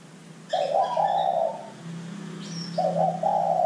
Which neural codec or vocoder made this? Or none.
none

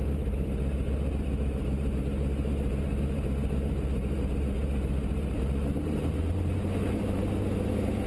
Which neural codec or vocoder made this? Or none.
vocoder, BigVGAN v2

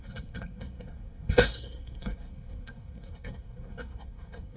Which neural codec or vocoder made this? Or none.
codec, SNAC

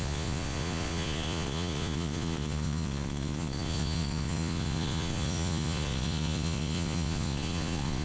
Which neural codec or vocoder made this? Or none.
vocoder, Vocos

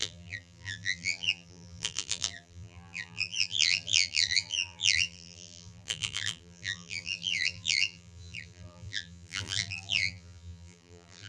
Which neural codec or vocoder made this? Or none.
vocoder, BigVGAN v2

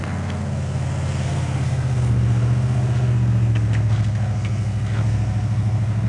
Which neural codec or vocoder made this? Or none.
codec, SNAC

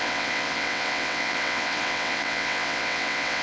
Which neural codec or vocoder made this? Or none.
vocoder, WaveNeXt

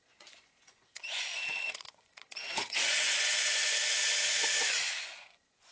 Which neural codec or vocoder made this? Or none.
vocoder, Vocos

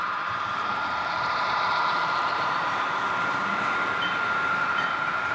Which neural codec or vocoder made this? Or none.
vocoder, BigVGAN v2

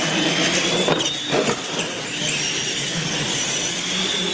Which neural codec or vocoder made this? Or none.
none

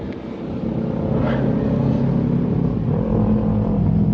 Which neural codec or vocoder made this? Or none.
none